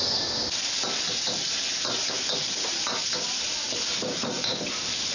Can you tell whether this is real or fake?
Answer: real